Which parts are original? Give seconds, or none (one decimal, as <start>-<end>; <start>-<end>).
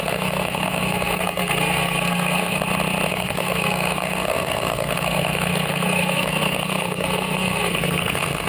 2.6-3.1